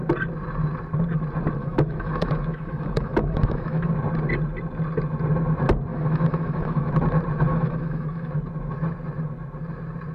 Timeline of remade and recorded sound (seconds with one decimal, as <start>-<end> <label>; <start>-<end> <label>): 0.0-1.6 recorded; 1.6-3.9 remade; 3.9-5.9 recorded; 5.9-6.9 remade; 6.9-7.5 recorded; 7.5-8.3 remade; 8.3-10.1 recorded

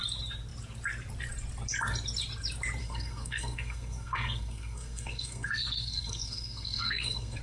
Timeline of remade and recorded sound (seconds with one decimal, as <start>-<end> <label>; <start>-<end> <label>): 0.0-2.8 recorded; 2.8-7.4 remade

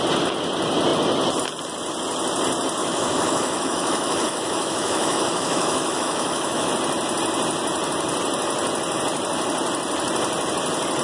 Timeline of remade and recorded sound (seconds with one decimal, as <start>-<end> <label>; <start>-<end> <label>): 0.0-2.8 recorded; 2.8-6.7 remade; 6.7-11.0 recorded

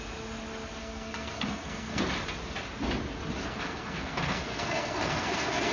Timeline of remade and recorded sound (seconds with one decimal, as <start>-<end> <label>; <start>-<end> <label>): 0.0-0.8 recorded; 0.8-2.0 remade; 2.0-3.4 recorded; 3.4-5.7 remade

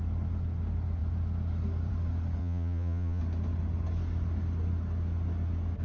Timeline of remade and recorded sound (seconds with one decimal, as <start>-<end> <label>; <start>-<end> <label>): 0.0-2.4 recorded; 2.4-3.2 remade; 3.2-5.8 recorded

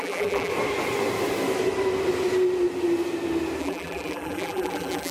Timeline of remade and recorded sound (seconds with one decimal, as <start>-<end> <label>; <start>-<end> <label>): 0.0-0.5 remade; 0.5-3.6 recorded; 3.6-5.1 remade